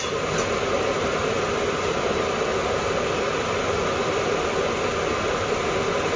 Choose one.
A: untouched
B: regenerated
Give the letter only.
A